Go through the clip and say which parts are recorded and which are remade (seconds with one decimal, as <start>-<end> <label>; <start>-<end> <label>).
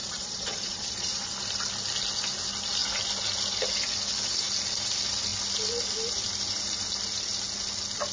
0.0-1.3 remade; 1.3-8.1 recorded